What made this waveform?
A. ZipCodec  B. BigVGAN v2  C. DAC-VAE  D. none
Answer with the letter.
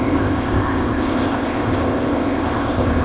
A